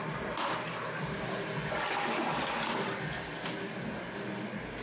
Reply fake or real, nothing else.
real